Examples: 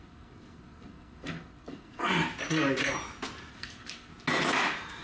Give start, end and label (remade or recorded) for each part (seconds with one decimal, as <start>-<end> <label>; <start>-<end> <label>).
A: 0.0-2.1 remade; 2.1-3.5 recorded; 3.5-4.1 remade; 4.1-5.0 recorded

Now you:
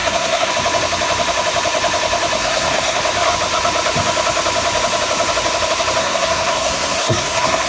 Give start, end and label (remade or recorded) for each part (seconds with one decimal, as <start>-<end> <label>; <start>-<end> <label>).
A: 0.0-0.5 remade; 0.5-2.4 recorded; 2.4-3.0 remade; 3.0-6.0 recorded; 6.0-7.7 remade

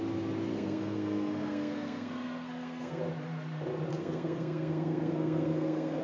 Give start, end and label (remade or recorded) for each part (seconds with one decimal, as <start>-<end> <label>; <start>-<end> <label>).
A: 0.0-0.5 recorded; 0.5-3.0 remade; 3.0-3.9 recorded; 3.9-6.0 remade

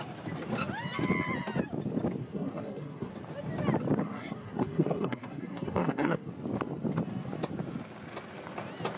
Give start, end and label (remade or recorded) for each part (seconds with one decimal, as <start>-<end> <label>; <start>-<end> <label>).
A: 0.0-2.2 recorded; 2.2-3.1 remade; 3.1-4.0 recorded; 4.0-6.3 remade; 6.3-9.0 recorded

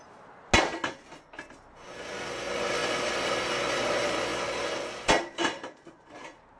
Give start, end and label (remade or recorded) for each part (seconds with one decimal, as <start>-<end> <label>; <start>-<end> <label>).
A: 0.0-6.6 recorded

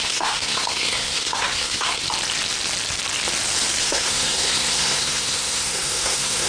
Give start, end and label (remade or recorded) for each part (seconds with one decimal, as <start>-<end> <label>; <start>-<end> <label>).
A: 0.0-2.0 remade; 2.0-3.8 recorded; 3.8-6.5 remade

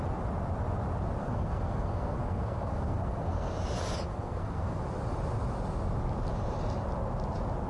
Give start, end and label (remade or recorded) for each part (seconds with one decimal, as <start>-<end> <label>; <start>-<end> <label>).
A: 0.0-1.2 recorded; 1.2-3.5 remade; 3.5-4.1 recorded; 4.1-4.8 remade; 4.8-7.7 recorded